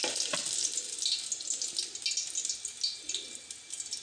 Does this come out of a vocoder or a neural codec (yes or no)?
no